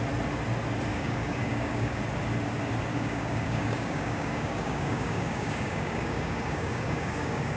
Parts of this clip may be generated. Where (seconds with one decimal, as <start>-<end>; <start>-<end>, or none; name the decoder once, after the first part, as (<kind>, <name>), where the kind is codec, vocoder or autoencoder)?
0.9-2.0 (codec, DAC); 2.9-7.6